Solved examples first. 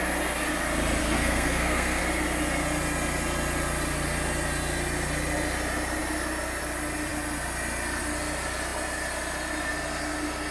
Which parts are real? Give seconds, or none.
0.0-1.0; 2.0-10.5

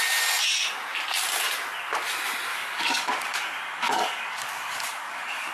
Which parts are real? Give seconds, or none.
0.0-2.5

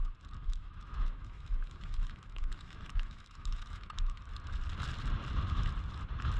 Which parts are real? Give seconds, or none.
0.0-0.4; 4.2-6.4

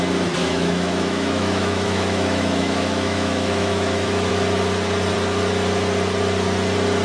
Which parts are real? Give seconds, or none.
0.0-0.4; 4.3-7.0

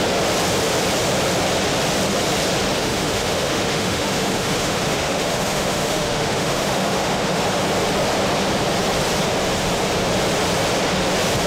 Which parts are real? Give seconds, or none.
0.0-2.8; 7.4-11.5

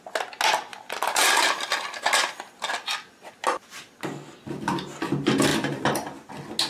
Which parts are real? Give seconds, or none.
0.0-0.7; 1.3-5.5; 6.3-6.7

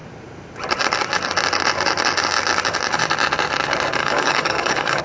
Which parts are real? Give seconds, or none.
0.0-4.0